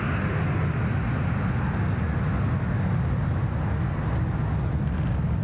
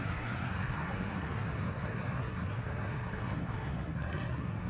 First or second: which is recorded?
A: first